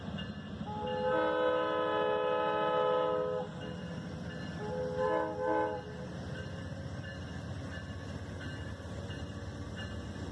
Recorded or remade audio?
recorded